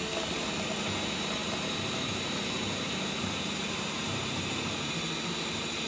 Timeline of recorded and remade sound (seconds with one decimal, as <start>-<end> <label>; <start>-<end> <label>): 0.0-1.4 recorded; 1.4-4.9 remade; 4.9-5.9 recorded